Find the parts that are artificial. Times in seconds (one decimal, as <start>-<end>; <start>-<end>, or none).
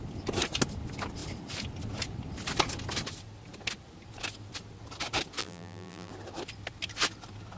5.4-6.1